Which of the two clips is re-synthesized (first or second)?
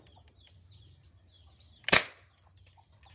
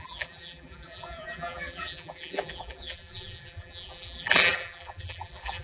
second